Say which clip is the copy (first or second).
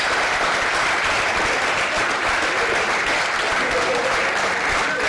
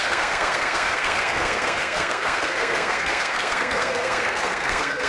second